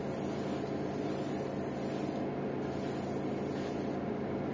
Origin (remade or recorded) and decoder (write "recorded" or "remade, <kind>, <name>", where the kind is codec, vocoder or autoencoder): recorded